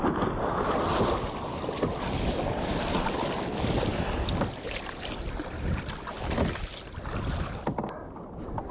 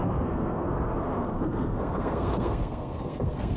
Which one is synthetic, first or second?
second